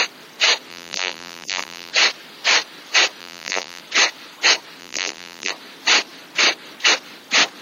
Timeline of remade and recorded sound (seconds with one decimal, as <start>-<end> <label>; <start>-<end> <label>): 0.0-0.7 recorded; 0.7-1.9 remade; 1.9-3.2 recorded; 3.2-3.8 remade; 3.8-4.8 recorded; 4.8-5.5 remade; 5.5-7.6 recorded